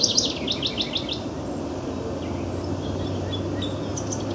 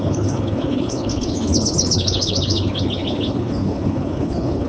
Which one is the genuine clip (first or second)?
first